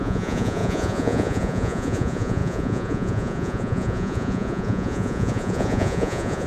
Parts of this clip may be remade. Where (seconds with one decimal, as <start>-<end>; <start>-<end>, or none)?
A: 0.0-6.5